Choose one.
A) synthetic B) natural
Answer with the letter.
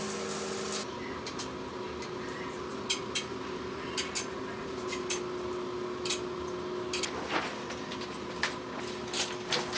B